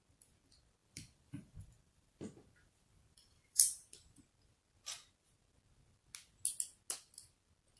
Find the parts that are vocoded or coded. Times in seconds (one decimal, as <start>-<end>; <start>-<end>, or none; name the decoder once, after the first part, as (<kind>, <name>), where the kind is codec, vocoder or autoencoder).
0.8-4.2 (vocoder, BigVGAN v2)